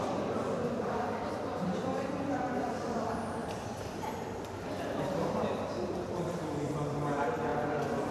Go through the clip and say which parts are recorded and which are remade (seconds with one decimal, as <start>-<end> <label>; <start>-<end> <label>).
0.0-8.1 remade